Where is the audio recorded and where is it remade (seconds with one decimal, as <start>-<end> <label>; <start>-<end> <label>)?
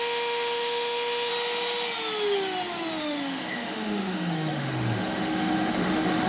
0.0-1.3 remade; 1.3-3.0 recorded; 3.0-6.3 remade